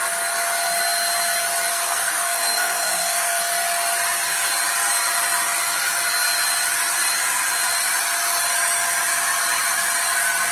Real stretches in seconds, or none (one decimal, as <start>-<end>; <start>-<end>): 0.0-1.7; 3.4-10.5